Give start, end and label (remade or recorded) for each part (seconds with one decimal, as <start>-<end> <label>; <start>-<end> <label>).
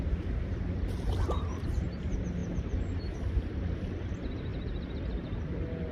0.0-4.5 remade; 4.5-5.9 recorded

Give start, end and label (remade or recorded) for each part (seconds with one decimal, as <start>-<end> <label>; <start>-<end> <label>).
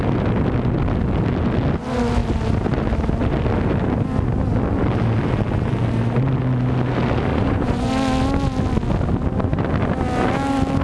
0.0-7.3 recorded; 7.3-7.9 remade; 7.9-10.8 recorded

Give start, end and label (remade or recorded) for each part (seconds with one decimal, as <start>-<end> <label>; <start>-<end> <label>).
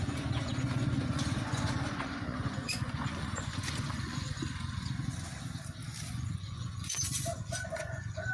0.0-4.4 remade; 4.4-6.1 recorded; 6.1-8.3 remade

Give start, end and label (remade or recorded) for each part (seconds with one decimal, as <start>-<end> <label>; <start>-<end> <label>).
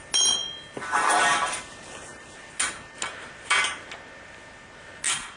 0.0-5.4 recorded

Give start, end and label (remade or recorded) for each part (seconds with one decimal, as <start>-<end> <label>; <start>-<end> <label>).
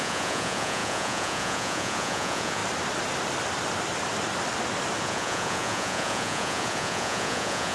0.0-2.6 remade; 2.6-5.0 recorded; 5.0-7.7 remade